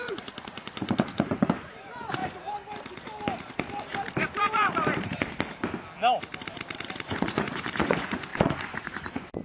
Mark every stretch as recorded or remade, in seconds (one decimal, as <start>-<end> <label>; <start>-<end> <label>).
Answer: 0.0-2.2 remade; 2.2-7.1 recorded; 7.1-9.4 remade